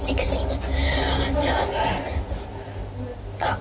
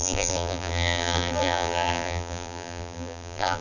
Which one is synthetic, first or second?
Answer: second